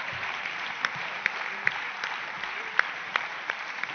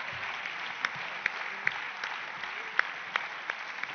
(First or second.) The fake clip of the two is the first